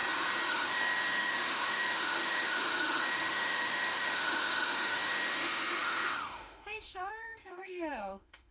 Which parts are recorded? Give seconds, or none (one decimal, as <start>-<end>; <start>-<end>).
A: 0.0-0.5